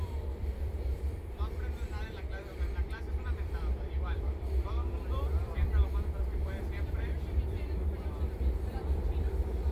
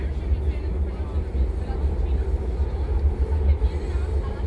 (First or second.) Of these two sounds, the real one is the second